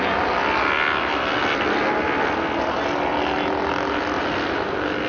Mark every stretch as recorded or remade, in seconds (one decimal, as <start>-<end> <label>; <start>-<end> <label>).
0.0-5.1 recorded